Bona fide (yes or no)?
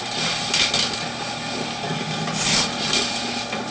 yes